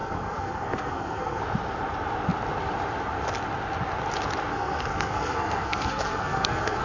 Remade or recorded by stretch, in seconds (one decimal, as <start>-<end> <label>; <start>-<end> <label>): 0.0-1.4 remade; 1.4-4.5 recorded; 4.5-6.8 remade